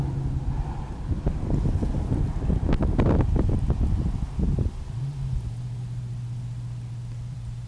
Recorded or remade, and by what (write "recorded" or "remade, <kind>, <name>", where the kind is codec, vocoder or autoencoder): recorded